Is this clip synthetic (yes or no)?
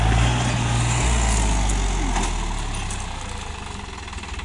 no